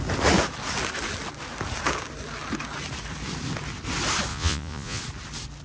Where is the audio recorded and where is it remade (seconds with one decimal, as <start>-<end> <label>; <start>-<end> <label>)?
0.0-4.3 recorded; 4.3-5.0 remade; 5.0-5.6 recorded